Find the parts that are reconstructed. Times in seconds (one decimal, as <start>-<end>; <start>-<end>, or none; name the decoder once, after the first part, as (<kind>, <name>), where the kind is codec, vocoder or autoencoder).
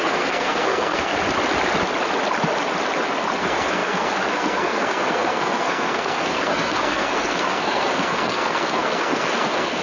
0.0-1.1 (codec, SNAC); 3.4-9.8